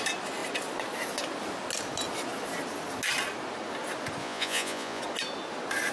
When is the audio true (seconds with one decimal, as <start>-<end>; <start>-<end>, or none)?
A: 0.0-4.2; 5.0-5.9